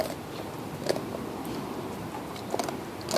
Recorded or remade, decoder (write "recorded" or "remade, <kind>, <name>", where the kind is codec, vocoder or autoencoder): recorded